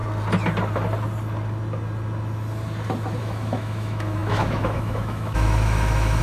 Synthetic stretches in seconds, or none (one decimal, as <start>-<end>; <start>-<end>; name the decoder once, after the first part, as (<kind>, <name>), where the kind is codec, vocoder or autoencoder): 3.2-6.2 (autoencoder, DAC-VAE)